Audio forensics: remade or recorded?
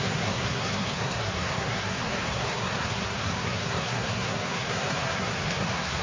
remade